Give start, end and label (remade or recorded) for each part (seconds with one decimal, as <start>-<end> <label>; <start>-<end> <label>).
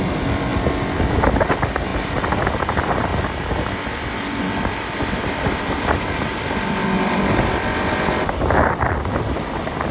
0.0-0.5 remade; 0.5-1.0 recorded; 1.0-1.9 remade; 1.9-2.5 recorded; 2.5-3.1 remade; 3.1-5.2 recorded; 5.2-9.9 remade